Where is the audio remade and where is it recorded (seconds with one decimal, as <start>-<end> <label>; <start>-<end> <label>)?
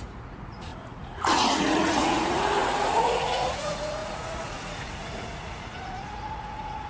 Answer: 0.0-6.9 remade